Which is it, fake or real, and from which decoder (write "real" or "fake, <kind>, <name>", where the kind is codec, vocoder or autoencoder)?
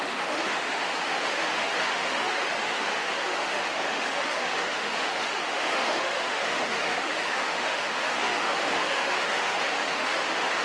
fake, autoencoder, DAC-VAE